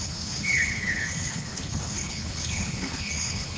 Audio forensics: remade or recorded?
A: remade